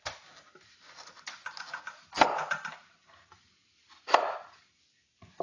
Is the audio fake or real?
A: real